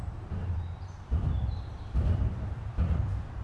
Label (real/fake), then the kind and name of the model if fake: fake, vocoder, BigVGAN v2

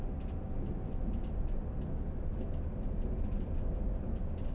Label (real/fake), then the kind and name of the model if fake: real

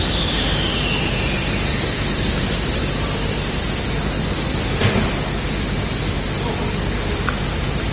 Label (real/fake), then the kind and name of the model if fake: fake, vocoder, BigVGAN v2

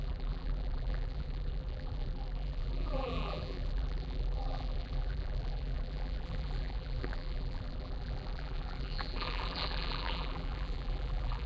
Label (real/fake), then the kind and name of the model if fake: fake, vocoder, BigVGAN v2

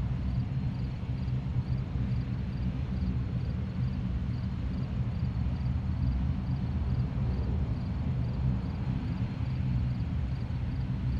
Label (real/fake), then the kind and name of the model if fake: real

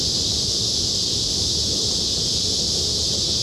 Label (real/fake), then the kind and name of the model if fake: real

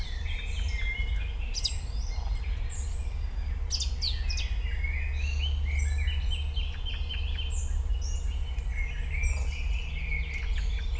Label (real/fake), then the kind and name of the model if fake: real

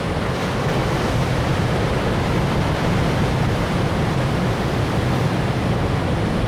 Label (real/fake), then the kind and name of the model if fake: fake, vocoder, BigVGAN v2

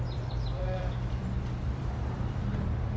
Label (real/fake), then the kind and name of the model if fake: fake, vocoder, BigVGAN v2